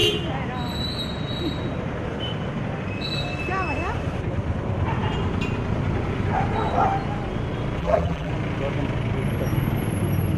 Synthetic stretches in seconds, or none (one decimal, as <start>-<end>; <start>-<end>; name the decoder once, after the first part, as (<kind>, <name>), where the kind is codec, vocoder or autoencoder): 7.8-8.3 (vocoder, BigVGAN v2)